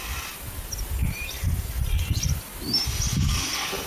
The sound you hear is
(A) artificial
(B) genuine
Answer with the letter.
B